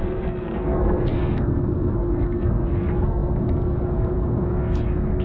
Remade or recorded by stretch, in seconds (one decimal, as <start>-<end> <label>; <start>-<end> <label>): 0.0-5.2 remade